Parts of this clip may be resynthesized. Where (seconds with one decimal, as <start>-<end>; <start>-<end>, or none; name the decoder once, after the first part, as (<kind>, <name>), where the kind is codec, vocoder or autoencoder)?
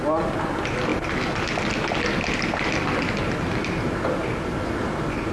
none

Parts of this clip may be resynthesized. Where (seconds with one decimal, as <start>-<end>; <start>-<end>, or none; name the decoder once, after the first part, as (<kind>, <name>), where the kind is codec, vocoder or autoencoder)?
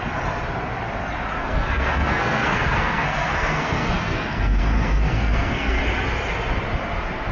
1.4-5.8 (codec, SNAC)